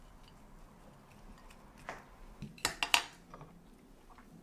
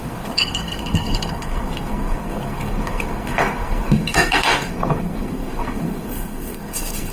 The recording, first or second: first